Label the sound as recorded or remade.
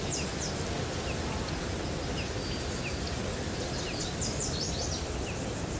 recorded